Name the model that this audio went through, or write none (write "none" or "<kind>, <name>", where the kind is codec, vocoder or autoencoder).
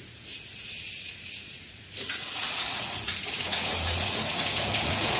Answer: vocoder, Vocos